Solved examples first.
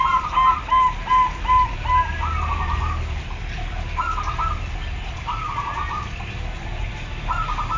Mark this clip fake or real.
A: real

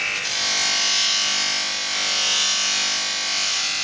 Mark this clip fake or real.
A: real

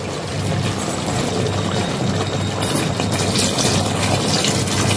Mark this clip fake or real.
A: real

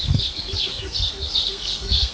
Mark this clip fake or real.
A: fake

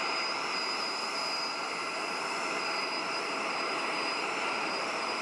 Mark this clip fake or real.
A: fake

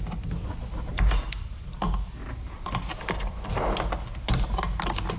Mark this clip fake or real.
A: real